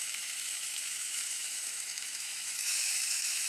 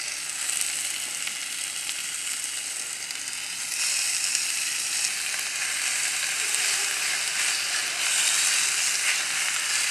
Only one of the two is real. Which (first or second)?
second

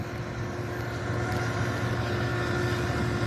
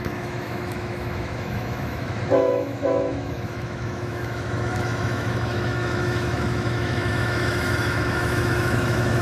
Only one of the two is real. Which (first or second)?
first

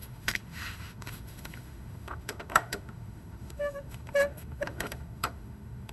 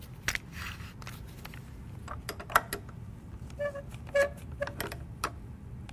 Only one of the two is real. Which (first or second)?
second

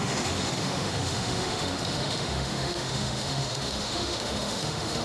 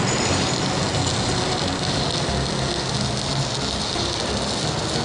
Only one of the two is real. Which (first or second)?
second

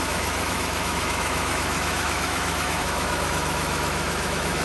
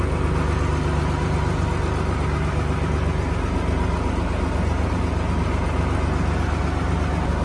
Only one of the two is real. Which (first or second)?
second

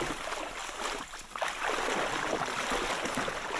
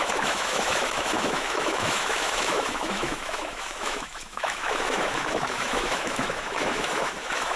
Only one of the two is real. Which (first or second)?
first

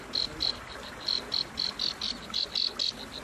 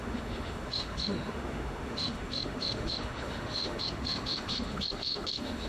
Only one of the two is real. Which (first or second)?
first